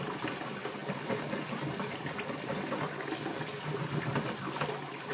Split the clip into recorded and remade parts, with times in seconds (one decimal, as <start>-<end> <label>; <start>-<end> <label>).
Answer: 0.0-5.1 recorded